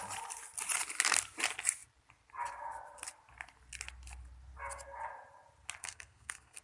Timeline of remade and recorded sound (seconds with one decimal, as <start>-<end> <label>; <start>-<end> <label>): 0.0-5.8 recorded; 5.8-6.6 remade